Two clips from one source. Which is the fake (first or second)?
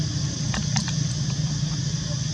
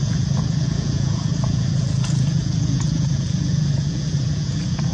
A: second